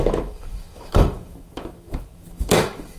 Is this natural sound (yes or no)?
no